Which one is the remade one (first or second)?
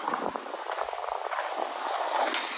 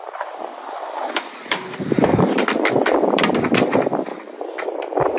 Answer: second